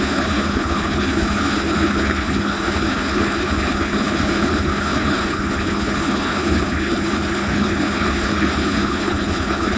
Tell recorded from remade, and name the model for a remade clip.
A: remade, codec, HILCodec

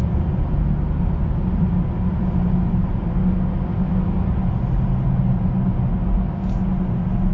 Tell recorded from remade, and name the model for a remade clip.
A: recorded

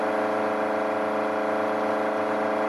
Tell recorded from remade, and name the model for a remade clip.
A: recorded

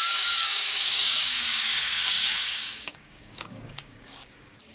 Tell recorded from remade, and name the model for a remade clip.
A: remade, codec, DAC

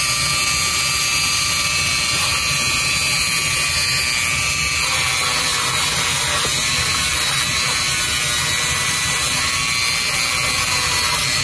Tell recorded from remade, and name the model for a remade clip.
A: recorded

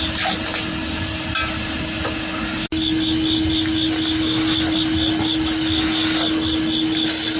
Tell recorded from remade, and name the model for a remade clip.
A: recorded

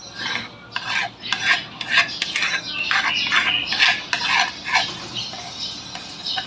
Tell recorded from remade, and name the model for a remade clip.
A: recorded